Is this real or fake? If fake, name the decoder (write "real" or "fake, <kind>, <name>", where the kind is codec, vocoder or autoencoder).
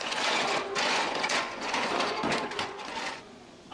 fake, vocoder, Vocos